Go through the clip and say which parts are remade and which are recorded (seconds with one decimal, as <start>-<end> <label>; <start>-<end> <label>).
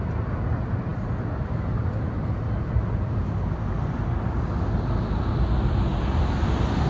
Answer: 0.0-6.9 recorded